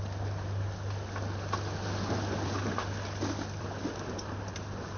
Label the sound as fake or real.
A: real